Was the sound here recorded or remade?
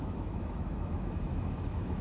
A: remade